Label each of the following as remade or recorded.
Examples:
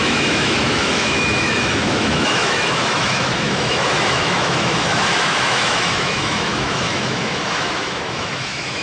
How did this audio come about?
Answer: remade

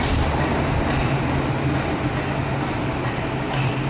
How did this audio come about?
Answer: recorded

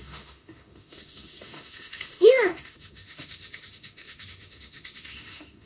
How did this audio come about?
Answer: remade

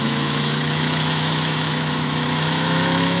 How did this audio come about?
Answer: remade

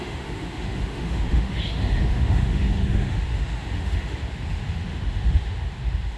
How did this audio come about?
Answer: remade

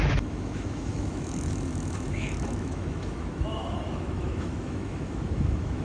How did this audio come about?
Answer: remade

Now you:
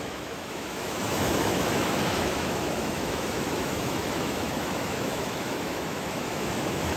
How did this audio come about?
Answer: remade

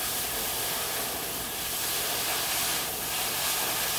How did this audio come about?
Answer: recorded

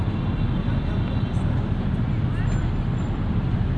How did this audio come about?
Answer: recorded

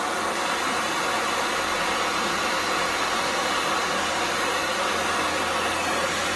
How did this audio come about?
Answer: recorded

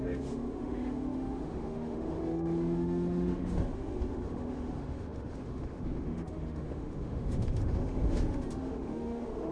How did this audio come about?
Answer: remade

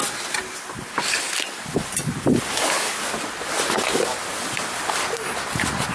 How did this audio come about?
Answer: recorded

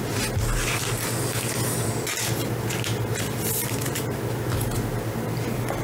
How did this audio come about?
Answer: recorded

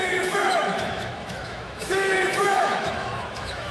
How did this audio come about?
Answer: remade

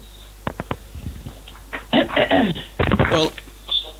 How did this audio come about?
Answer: recorded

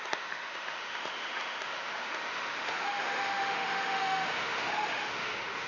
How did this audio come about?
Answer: remade